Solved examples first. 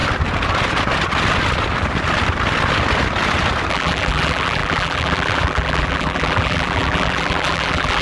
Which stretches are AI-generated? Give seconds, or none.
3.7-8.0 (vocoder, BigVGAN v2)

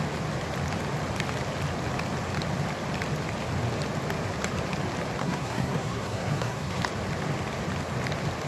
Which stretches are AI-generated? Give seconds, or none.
5.2-6.8 (codec, SNAC)

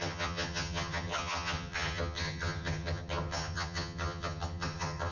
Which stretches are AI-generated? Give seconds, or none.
0.0-5.1 (vocoder, HiFi-GAN)

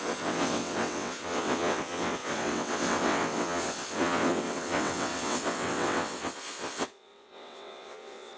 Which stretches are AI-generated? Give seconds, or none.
0.0-8.4 (vocoder, WaveNeXt)

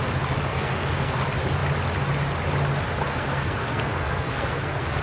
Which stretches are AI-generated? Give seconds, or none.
0.5-1.2 (codec, SNAC); 3.1-5.0